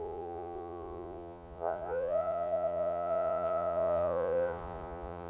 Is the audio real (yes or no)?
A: no